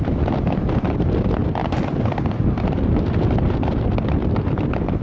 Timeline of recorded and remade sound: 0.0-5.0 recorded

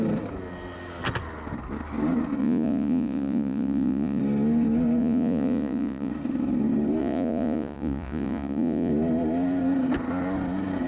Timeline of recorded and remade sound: 0.0-2.4 recorded; 2.4-4.2 remade; 4.2-5.0 recorded; 5.0-6.1 remade; 6.1-7.0 recorded; 7.0-8.9 remade; 8.9-10.9 recorded

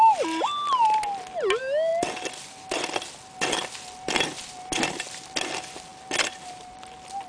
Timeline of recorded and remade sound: 0.0-7.3 recorded

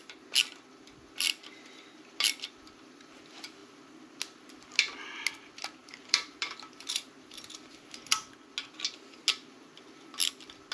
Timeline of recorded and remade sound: 0.0-5.8 recorded; 5.8-6.5 remade; 6.5-10.7 recorded

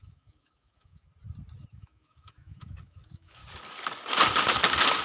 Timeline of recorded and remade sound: 0.0-1.1 remade; 1.1-1.7 recorded; 1.7-3.4 remade; 3.4-5.0 recorded

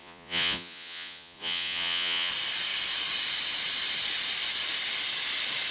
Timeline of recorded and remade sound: 0.0-2.3 remade; 2.3-5.7 recorded